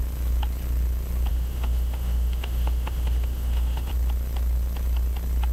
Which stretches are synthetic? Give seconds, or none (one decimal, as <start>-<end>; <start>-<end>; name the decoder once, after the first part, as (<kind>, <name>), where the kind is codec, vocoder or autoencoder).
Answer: 1.3-3.9 (autoencoder, DAC-VAE)